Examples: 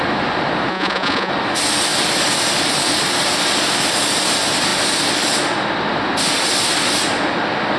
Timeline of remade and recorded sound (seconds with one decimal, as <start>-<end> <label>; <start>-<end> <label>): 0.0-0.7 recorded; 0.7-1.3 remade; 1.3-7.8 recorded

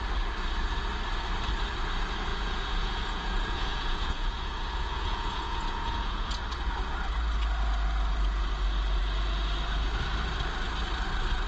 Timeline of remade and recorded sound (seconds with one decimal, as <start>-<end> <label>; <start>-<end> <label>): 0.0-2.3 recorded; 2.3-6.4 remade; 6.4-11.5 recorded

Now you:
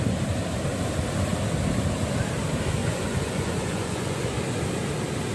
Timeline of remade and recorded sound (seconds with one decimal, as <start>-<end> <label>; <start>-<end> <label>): 0.0-2.8 recorded; 2.8-4.4 remade; 4.4-5.3 recorded

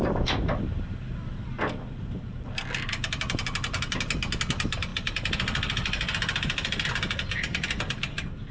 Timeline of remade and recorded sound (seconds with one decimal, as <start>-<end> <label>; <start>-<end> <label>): 0.0-8.5 recorded

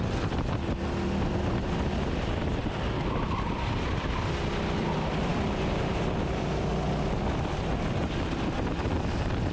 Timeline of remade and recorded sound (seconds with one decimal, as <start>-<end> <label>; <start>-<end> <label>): 0.0-9.5 recorded

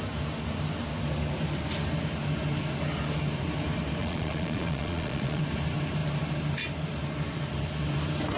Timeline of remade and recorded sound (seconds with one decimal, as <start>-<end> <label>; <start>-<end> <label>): 0.0-4.0 recorded; 4.0-5.4 remade; 5.4-8.4 recorded